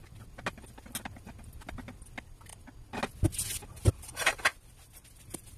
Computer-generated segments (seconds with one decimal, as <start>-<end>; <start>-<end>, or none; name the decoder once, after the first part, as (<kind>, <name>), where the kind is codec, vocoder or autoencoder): none